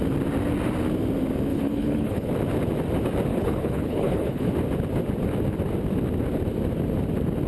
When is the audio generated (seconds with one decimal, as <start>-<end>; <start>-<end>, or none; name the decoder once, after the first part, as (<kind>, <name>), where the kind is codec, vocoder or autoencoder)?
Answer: 1.5-2.3 (codec, HILCodec); 3.3-4.5